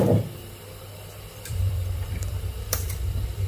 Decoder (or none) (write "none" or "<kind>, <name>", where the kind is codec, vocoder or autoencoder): vocoder, BigVGAN v2